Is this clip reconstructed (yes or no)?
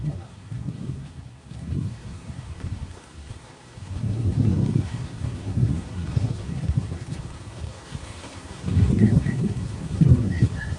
yes